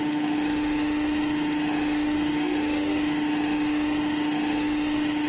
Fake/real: fake